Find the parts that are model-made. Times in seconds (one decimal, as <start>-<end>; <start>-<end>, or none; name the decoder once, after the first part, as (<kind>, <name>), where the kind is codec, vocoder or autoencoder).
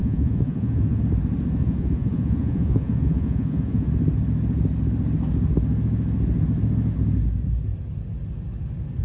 0.0-1.0 (vocoder, Vocos); 1.6-3.9